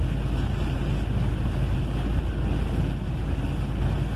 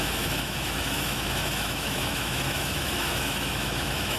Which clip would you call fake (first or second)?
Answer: second